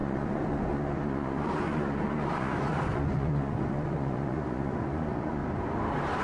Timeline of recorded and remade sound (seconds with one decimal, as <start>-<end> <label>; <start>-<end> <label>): 0.0-5.4 remade; 5.4-6.2 recorded